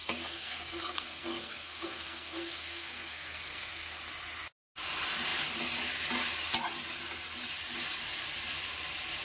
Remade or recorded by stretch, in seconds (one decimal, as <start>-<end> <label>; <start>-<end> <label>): 0.0-4.0 remade; 4.0-9.2 recorded